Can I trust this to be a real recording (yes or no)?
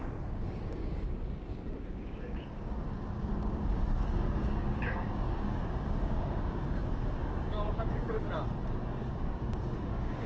no